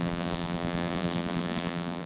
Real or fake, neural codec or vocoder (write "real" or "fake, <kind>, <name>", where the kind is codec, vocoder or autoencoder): fake, vocoder, BigVGAN v2